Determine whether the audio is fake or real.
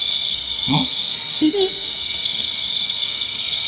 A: fake